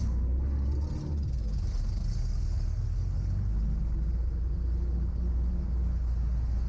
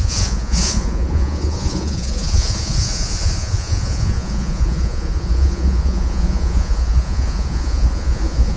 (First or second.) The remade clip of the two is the second